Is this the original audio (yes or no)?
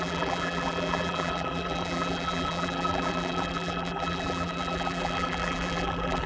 no